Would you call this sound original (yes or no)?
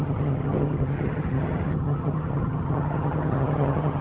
no